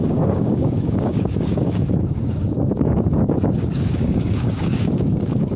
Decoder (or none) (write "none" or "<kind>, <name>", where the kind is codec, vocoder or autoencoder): codec, DAC